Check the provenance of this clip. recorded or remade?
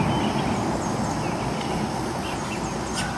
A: recorded